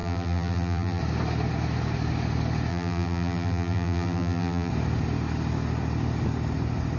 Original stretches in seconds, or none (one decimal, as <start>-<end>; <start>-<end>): 1.0-2.7; 4.7-7.0